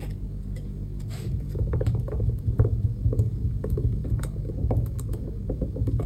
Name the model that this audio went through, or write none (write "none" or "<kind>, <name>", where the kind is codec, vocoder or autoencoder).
codec, DAC